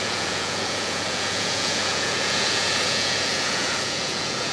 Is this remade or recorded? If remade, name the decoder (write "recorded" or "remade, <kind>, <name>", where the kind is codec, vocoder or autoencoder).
remade, vocoder, Vocos